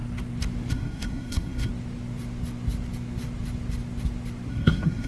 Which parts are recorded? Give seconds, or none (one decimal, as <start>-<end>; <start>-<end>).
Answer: 0.0-0.7; 1.7-4.5